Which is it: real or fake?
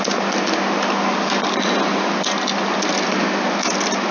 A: real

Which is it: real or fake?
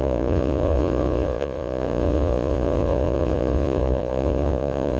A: fake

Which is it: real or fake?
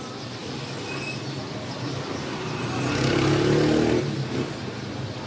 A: real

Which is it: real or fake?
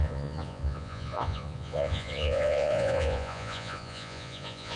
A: fake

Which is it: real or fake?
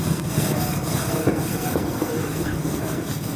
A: fake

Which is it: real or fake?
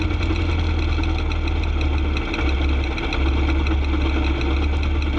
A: real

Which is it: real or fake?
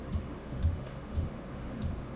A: fake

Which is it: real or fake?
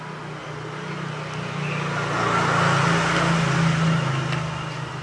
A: real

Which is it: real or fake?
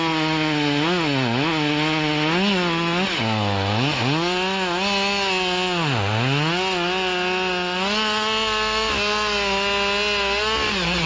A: real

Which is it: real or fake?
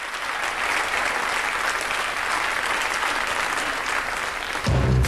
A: real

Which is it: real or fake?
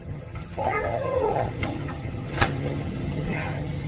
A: fake